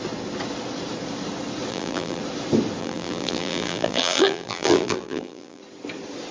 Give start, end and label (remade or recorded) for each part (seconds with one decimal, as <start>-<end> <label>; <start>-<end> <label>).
0.0-1.7 recorded; 1.7-2.2 remade; 2.2-2.8 recorded; 2.8-5.6 remade; 5.6-6.3 recorded